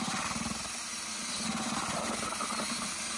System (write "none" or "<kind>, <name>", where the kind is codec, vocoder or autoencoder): none